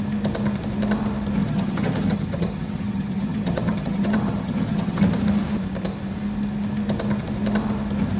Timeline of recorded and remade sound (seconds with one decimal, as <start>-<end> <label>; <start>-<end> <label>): 0.0-1.4 recorded; 1.4-5.0 remade; 5.0-8.2 recorded